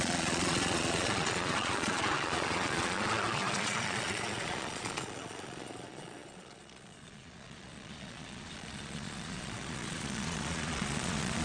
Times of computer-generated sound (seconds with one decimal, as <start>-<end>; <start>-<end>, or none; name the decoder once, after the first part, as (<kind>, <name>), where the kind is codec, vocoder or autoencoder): 0.0-11.4 (vocoder, Vocos)